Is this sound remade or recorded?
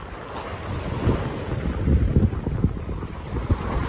recorded